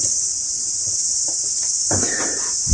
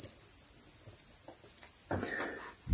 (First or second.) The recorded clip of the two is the second